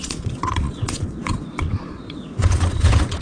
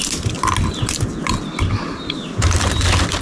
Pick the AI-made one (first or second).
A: first